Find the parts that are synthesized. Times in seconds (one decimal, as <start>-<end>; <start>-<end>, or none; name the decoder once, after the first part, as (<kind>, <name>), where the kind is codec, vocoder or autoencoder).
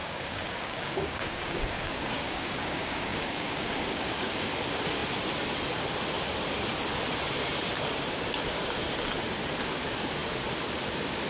0.0-4.5 (codec, DAC)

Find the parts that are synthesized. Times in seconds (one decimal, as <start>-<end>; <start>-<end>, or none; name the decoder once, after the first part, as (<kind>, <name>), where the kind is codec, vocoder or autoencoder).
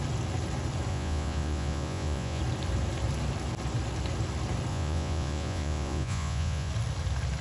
0.9-2.4 (vocoder, Vocos); 4.7-6.7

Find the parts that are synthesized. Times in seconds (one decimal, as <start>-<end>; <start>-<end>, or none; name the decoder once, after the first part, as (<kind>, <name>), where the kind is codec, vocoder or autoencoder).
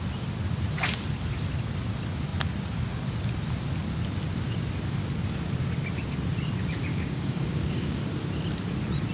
6.9-8.0 (codec, DAC)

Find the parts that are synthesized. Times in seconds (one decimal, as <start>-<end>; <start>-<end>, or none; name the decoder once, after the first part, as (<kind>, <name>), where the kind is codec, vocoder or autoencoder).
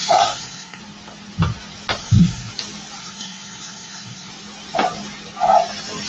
0.0-0.8 (codec, SNAC); 2.0-2.5; 3.0-4.3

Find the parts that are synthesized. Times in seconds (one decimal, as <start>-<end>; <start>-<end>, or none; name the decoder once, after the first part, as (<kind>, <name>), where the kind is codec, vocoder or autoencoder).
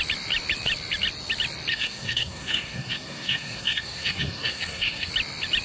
1.7-5.1 (codec, SNAC)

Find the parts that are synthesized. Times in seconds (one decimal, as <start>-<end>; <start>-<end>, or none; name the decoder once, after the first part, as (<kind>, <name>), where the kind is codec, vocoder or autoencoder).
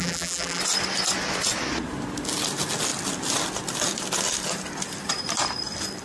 0.0-0.6 (vocoder, BigVGAN v2)